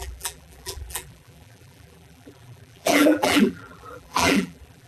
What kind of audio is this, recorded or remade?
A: remade